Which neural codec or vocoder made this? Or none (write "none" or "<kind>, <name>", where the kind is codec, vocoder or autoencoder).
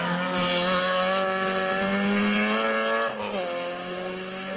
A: none